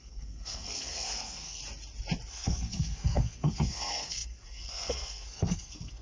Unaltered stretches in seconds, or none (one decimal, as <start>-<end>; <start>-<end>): 1.6-2.3